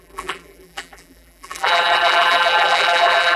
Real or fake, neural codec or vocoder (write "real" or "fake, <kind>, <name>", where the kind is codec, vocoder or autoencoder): fake, vocoder, BigVGAN v2